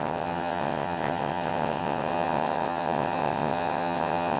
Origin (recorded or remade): remade